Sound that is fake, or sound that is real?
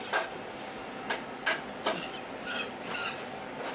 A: real